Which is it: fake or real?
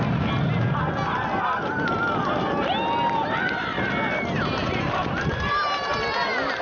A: real